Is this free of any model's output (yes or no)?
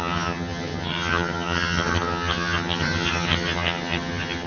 no